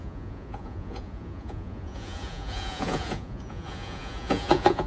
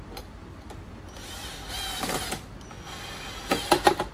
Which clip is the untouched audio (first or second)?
second